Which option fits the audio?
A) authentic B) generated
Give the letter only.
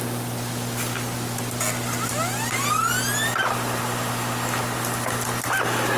A